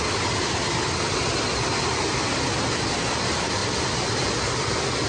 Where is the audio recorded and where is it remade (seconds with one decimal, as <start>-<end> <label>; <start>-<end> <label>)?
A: 0.0-5.1 recorded